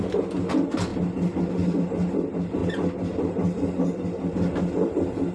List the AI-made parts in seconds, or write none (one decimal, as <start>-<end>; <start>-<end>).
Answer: none